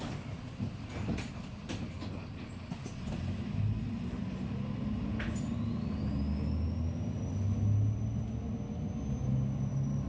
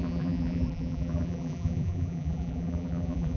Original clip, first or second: first